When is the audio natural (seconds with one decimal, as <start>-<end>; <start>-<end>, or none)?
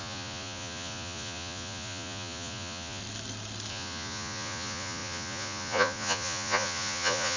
3.0-3.7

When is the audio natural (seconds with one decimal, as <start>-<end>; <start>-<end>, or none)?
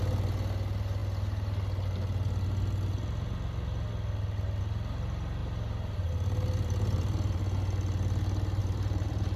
0.0-5.4; 7.4-8.6